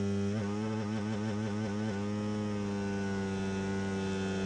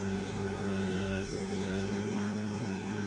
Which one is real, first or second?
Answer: first